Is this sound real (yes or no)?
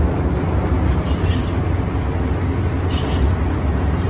yes